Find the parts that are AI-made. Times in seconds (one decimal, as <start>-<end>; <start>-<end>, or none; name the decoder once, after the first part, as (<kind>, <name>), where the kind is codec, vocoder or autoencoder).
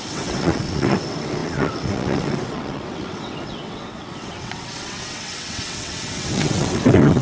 0.0-7.2 (vocoder, WaveNeXt)